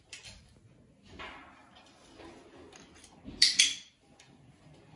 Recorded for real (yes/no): yes